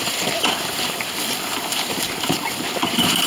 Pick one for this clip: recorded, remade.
remade